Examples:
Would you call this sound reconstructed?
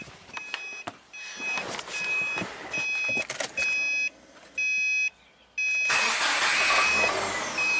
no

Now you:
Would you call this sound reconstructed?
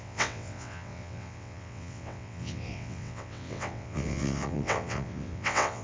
yes